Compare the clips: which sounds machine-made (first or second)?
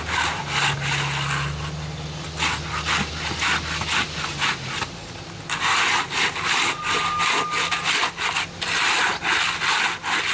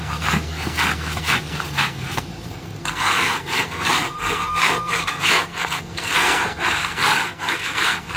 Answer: second